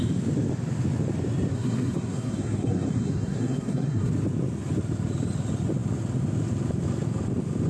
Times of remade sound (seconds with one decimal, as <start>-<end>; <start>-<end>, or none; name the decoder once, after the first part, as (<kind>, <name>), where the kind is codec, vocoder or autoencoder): 1.5-4.1 (codec, SNAC)